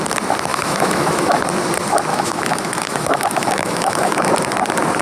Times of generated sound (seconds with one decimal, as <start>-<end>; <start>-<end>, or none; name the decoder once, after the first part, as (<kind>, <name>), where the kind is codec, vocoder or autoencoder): 0.5-1.4 (autoencoder, DAC-VAE); 2.1-4.3

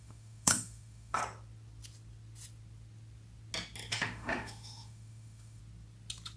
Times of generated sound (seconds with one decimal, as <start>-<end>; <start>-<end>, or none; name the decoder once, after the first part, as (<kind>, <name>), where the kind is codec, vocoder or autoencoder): 0.0-1.2 (autoencoder, DAC-VAE); 3.9-5.6

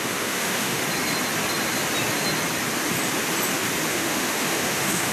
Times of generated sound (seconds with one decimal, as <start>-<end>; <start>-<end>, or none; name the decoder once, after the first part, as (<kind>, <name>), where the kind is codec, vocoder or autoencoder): 0.0-0.8 (autoencoder, DAC-VAE); 3.9-5.1

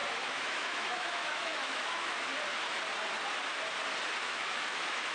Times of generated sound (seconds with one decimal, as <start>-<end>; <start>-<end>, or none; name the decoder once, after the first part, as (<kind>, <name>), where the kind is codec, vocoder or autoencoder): 0.0-2.3 (autoencoder, DAC-VAE); 4.2-5.1

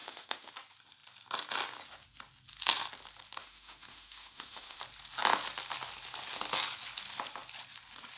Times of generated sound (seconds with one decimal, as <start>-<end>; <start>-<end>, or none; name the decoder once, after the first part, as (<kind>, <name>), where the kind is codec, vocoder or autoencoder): 0.0-0.5 (autoencoder, DAC-VAE); 3.4-4.8

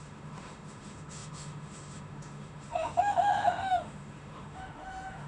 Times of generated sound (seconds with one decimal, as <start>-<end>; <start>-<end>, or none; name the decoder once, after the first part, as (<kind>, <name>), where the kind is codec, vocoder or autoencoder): 0.0-5.3 (autoencoder, DAC-VAE)